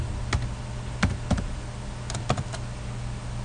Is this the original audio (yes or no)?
yes